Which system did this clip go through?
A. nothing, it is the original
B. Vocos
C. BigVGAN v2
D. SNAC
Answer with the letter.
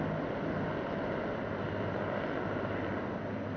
A